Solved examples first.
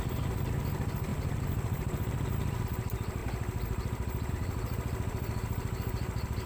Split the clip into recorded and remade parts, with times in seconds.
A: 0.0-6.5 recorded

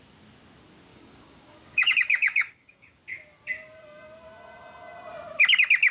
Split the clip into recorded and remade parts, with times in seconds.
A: 0.0-0.9 recorded; 0.9-3.0 remade; 3.0-5.9 recorded

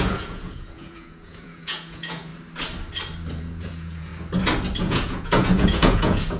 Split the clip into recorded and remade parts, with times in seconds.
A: 0.0-2.3 remade; 2.3-3.4 recorded; 3.4-4.1 remade; 4.1-4.8 recorded; 4.8-6.4 remade

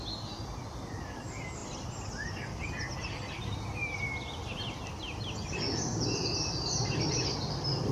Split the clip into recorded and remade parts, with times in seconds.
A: 0.0-7.9 recorded

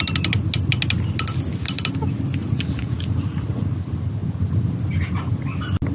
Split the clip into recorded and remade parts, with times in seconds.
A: 0.0-2.4 recorded; 2.4-3.7 remade; 3.7-5.9 recorded